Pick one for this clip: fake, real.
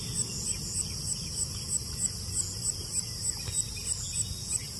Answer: real